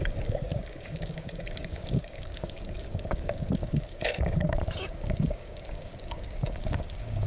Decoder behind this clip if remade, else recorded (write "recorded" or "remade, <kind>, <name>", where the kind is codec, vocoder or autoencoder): remade, codec, DAC